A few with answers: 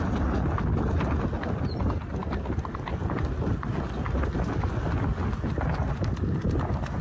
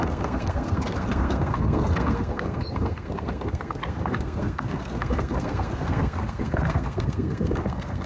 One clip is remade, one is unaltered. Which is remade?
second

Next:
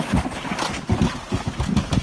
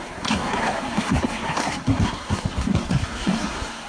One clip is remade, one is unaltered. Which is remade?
second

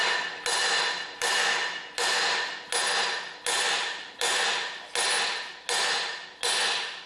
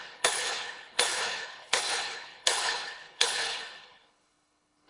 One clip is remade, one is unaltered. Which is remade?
second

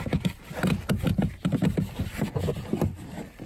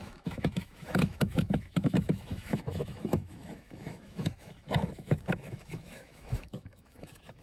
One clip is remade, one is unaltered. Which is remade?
second